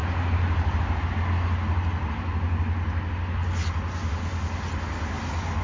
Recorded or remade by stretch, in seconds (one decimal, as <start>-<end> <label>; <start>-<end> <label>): 0.0-5.6 recorded

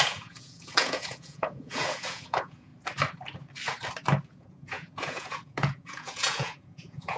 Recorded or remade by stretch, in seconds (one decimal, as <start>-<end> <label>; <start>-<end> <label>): 0.0-2.7 remade; 2.7-4.3 recorded; 4.3-7.2 remade

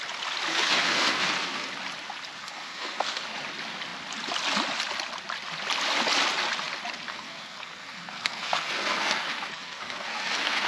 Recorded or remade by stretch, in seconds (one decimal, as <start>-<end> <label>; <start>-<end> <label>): 0.0-0.5 recorded; 0.5-1.7 remade; 1.7-2.4 recorded; 2.4-3.2 remade; 3.2-7.1 recorded; 7.1-10.7 remade